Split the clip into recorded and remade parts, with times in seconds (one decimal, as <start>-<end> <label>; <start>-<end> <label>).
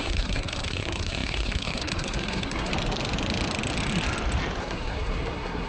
0.0-2.7 remade; 2.7-4.6 recorded; 4.6-5.7 remade